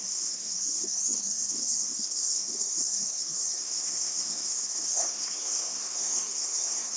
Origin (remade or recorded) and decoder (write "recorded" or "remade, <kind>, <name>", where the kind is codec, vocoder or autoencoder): remade, codec, SNAC